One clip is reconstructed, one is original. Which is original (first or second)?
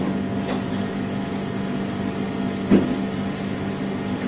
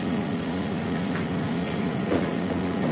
first